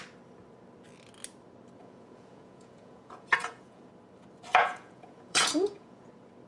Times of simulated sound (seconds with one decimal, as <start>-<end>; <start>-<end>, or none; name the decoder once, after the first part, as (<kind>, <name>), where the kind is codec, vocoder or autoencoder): 1.8-3.9 (vocoder, Vocos); 4.5-6.1